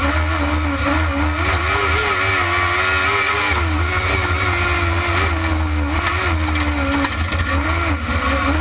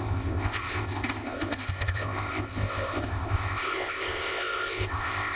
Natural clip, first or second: first